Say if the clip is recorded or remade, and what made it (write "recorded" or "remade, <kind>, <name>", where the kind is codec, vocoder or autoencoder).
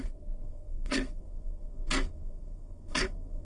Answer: remade, codec, SNAC